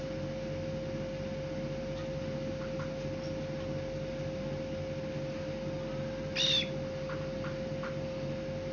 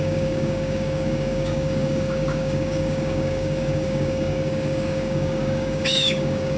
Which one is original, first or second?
first